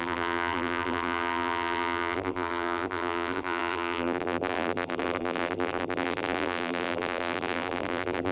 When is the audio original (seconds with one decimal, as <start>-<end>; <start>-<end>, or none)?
none